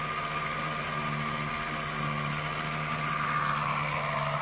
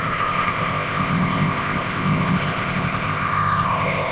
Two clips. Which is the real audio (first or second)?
first